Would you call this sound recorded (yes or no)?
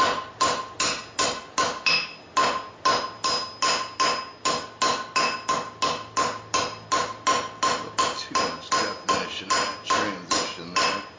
yes